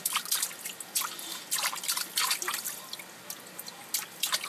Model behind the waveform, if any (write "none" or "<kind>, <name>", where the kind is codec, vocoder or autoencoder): none